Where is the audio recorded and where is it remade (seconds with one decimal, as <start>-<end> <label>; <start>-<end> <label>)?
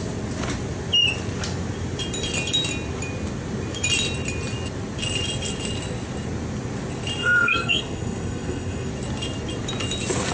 0.0-7.2 recorded; 7.2-8.9 remade; 8.9-10.3 recorded